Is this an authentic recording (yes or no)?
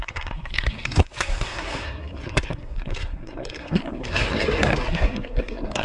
no